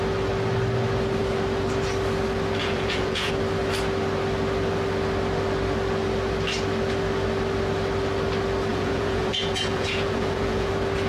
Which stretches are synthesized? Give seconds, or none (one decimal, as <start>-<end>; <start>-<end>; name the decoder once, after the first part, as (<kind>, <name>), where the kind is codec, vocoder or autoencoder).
2.6-3.3 (vocoder, Vocos); 8.7-10.7

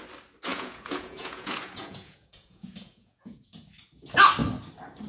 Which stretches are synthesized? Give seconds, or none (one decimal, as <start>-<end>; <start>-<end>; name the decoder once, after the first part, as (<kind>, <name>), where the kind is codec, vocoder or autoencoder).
0.5-3.6 (vocoder, Vocos)

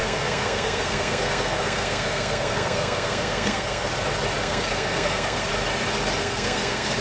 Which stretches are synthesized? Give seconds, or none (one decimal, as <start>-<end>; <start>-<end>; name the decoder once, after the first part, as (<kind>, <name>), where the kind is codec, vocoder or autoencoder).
0.0-3.9 (codec, SNAC); 4.4-5.5; 6.2-7.0

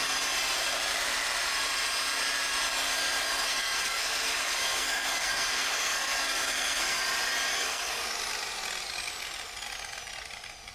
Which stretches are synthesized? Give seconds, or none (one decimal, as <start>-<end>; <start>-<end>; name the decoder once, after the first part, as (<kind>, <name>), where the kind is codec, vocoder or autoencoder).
3.3-7.0 (codec, SNAC); 7.5-8.0

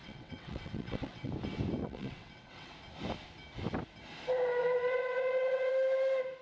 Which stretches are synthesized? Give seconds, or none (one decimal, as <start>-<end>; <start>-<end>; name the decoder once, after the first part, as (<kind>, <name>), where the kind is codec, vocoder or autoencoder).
0.0-1.3 (vocoder, WaveNeXt); 1.8-2.7; 4.6-5.7

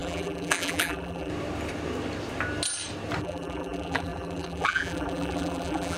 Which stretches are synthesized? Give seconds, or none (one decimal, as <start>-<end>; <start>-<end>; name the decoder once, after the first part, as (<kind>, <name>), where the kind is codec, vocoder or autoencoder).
0.0-1.3 (vocoder, BigVGAN v2); 3.2-6.0